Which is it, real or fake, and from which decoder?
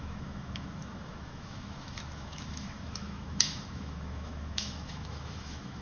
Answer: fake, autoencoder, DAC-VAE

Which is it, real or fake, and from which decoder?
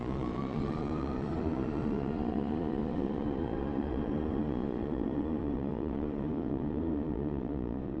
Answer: fake, vocoder, Vocos